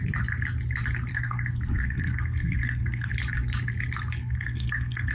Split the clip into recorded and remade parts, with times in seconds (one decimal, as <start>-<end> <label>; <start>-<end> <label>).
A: 0.0-1.1 recorded; 1.1-3.1 remade; 3.1-4.2 recorded; 4.2-5.1 remade